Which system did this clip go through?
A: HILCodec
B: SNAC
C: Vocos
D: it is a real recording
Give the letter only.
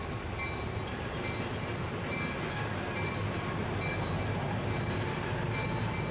D